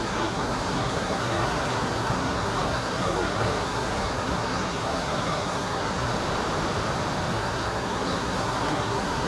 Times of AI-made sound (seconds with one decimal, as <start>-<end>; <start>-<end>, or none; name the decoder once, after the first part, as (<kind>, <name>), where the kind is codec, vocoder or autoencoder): 0.0-6.1 (codec, SNAC); 7.3-9.3